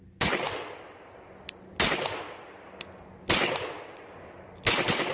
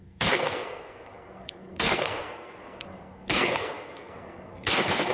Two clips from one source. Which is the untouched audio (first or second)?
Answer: first